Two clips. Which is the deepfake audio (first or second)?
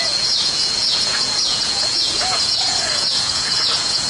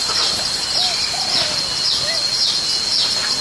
first